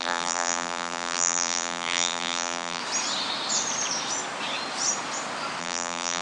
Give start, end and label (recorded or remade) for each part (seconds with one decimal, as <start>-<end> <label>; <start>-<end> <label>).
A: 0.0-2.8 remade; 2.8-5.6 recorded; 5.6-6.2 remade